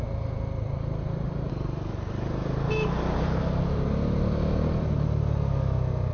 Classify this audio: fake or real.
real